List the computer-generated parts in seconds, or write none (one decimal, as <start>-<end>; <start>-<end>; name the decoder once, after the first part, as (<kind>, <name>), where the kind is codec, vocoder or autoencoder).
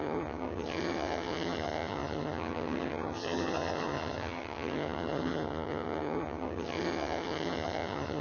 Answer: 0.0-8.2 (vocoder, HiFi-GAN)